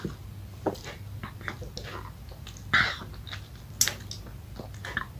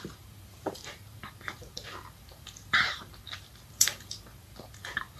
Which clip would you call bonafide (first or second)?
first